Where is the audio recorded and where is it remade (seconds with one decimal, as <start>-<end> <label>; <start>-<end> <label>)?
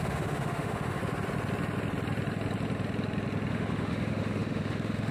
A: 0.0-1.0 remade; 1.0-3.5 recorded; 3.5-5.1 remade